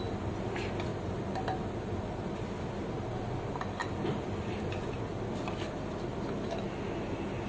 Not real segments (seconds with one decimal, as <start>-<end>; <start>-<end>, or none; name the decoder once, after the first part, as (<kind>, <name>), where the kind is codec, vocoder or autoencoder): 0.9-2.8 (vocoder, BigVGAN v2); 3.8-5.4